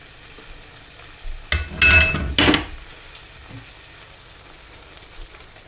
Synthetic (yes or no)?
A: no